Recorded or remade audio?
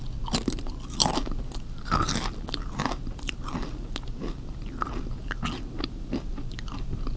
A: recorded